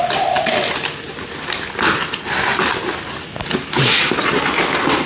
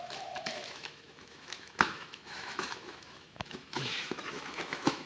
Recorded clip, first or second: first